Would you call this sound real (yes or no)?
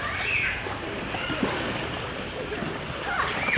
yes